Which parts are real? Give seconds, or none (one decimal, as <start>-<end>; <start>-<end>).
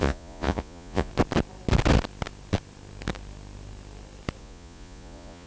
1.1-4.4